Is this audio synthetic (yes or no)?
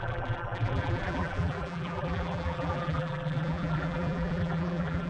yes